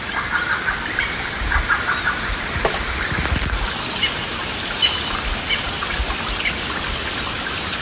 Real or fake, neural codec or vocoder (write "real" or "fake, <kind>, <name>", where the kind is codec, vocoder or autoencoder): real